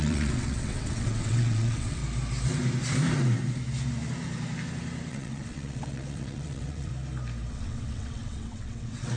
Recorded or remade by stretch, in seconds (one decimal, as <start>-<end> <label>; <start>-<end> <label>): 0.0-2.0 remade; 2.0-5.1 recorded; 5.1-6.9 remade; 6.9-7.5 recorded; 7.5-9.2 remade